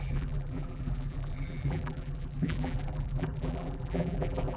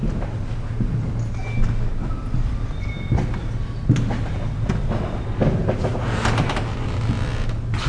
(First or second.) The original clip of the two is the second